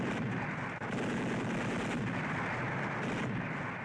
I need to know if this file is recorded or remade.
recorded